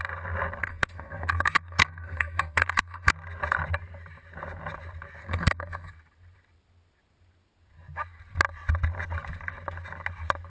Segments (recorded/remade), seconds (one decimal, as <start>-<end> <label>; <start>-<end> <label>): 0.0-0.6 recorded; 0.6-3.1 remade; 3.1-5.2 recorded; 5.2-5.9 remade; 5.9-10.5 recorded